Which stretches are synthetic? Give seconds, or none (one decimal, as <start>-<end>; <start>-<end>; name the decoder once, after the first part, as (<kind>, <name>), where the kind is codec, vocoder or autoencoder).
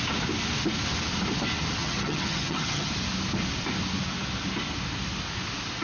1.8-2.9 (vocoder, HiFi-GAN)